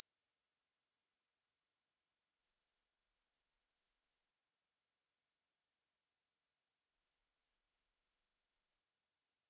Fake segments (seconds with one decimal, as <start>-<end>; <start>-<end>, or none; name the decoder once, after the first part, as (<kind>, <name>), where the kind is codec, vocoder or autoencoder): 2.4-4.3 (codec, HILCodec); 6.9-8.8